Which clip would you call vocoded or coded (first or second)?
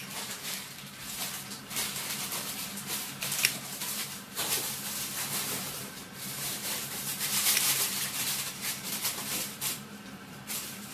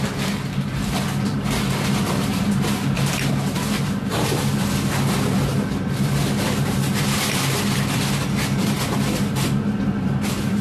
first